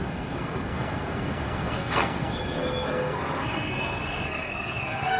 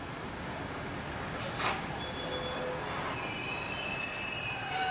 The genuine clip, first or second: second